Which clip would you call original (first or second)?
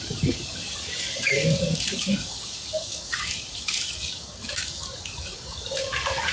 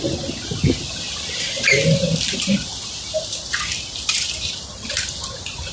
second